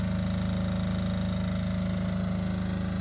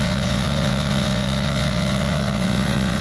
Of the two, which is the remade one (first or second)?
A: second